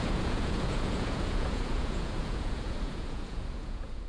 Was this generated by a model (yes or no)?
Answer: yes